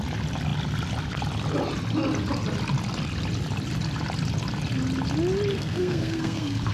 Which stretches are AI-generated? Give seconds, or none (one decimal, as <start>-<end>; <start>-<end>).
5.5-6.7